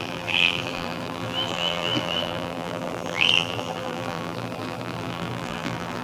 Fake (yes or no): yes